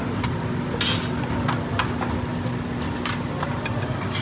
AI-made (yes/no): no